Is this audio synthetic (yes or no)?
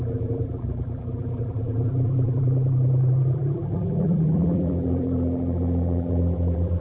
yes